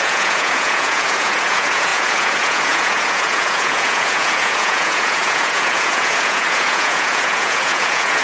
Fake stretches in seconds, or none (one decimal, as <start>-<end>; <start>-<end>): 0.0-8.2